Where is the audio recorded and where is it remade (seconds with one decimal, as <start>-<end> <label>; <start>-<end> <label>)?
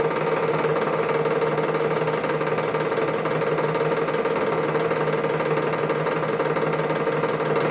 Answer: 0.0-7.7 recorded